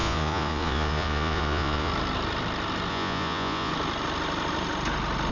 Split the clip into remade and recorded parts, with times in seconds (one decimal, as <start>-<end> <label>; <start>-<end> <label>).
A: 0.0-1.9 remade; 1.9-2.9 recorded; 2.9-3.7 remade; 3.7-5.3 recorded